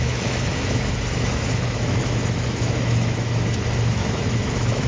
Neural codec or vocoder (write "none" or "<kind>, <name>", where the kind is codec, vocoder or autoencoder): autoencoder, DAC-VAE